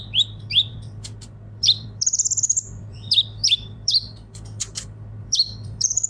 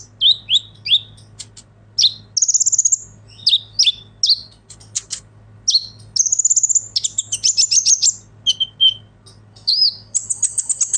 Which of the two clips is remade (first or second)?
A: first